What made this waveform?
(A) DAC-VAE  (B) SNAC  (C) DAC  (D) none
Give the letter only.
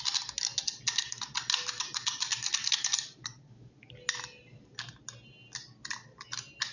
D